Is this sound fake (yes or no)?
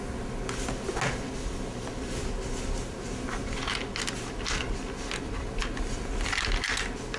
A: no